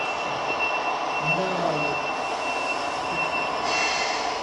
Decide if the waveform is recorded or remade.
recorded